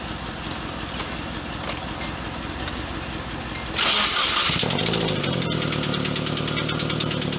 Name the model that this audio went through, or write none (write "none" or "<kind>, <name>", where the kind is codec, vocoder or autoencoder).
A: none